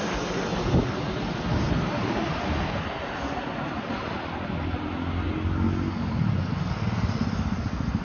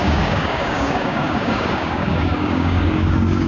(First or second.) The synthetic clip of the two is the second